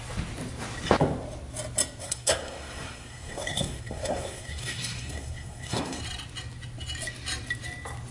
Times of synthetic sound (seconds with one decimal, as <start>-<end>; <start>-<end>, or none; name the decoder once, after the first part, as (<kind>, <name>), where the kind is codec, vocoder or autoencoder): 2.0-6.0 (codec, SNAC)